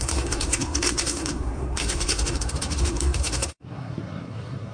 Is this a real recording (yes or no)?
no